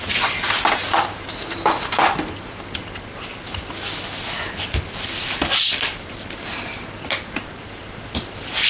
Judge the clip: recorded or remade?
recorded